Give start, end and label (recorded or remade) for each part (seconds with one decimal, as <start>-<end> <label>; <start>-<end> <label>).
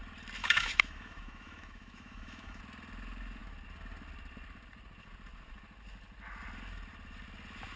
0.0-0.4 recorded; 0.4-2.6 remade; 2.6-7.8 recorded